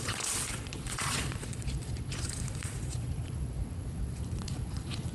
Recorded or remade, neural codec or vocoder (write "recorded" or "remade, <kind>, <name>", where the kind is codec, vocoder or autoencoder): remade, vocoder, Vocos